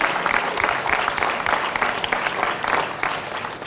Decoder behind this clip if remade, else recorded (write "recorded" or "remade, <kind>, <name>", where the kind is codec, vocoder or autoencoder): recorded